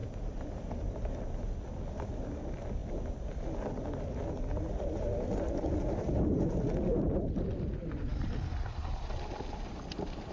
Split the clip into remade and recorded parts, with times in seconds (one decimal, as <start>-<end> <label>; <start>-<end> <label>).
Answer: 0.0-10.3 recorded